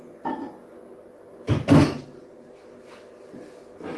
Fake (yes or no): no